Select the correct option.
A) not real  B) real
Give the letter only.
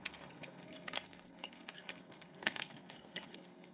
A